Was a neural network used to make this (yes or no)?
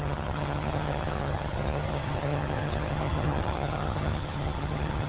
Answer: yes